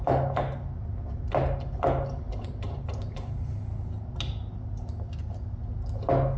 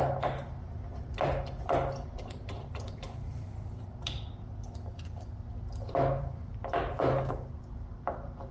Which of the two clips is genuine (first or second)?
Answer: first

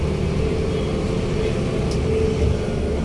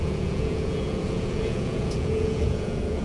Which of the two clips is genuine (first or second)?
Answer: first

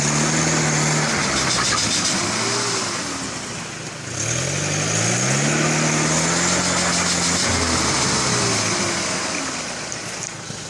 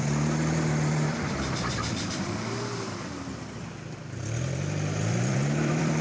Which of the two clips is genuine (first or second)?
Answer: first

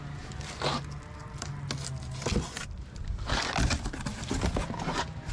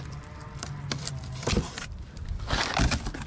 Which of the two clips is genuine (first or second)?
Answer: first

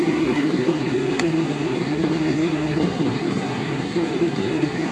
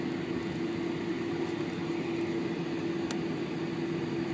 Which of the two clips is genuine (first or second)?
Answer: second